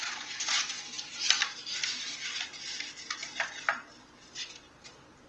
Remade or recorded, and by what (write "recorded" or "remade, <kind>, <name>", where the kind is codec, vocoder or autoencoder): remade, vocoder, BigVGAN v2